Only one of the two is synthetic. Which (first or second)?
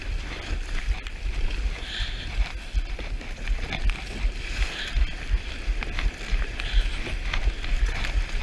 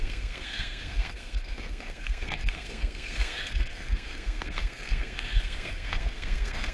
second